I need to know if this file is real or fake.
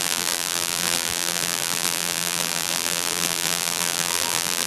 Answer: fake